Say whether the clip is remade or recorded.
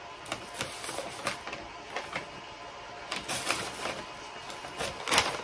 recorded